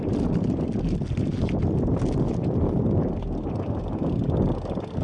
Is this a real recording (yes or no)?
yes